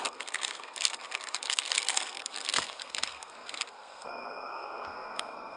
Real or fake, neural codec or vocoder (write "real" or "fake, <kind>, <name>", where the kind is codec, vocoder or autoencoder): fake, codec, SNAC